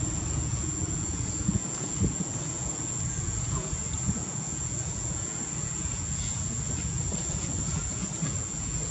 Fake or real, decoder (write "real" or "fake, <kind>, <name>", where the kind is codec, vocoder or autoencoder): fake, vocoder, Vocos